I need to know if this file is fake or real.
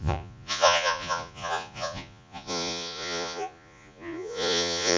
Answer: fake